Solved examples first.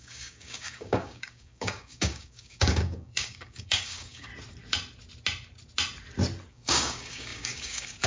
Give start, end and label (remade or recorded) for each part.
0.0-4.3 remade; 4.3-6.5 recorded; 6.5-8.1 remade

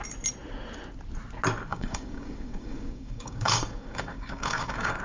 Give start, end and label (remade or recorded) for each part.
0.0-1.7 recorded; 1.7-5.0 remade

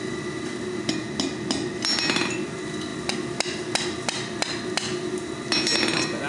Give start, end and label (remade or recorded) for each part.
0.0-6.3 recorded

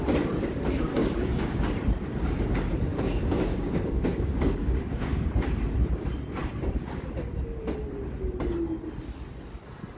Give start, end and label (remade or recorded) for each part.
0.0-0.9 recorded; 0.9-1.6 remade; 1.6-2.9 recorded; 2.9-5.3 remade; 5.3-10.0 recorded

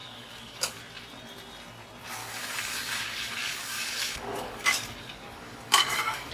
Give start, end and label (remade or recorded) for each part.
0.0-0.8 remade; 0.8-2.2 recorded; 2.2-6.3 remade

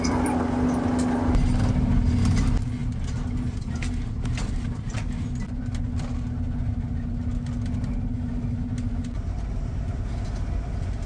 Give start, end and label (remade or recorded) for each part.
0.0-11.1 recorded

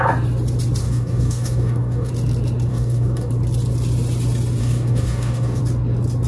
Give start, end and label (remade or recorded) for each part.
0.0-0.8 recorded; 0.8-2.1 remade; 2.1-2.7 recorded; 2.7-3.3 remade; 3.3-4.6 recorded; 4.6-5.6 remade; 5.6-6.3 recorded

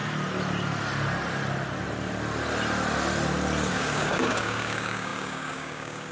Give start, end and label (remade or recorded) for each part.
0.0-3.7 recorded; 3.7-6.1 remade